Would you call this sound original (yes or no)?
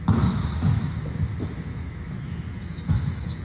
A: no